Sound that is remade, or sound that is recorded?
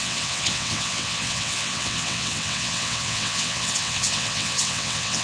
remade